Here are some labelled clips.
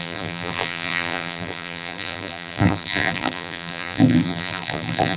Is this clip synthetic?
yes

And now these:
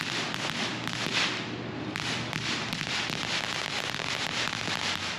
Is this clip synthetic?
no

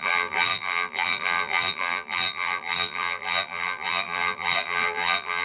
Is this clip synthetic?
yes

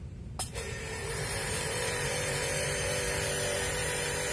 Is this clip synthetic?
yes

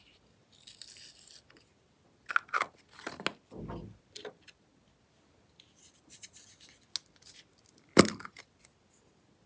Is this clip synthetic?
no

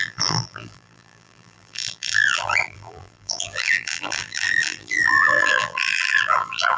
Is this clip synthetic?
yes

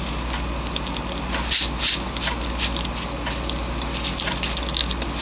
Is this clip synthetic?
no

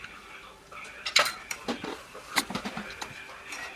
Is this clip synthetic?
yes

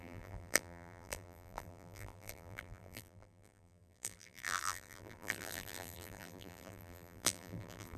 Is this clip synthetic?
yes